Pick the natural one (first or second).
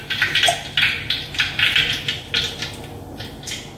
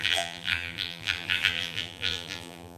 first